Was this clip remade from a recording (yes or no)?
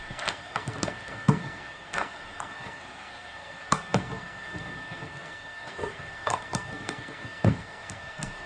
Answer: yes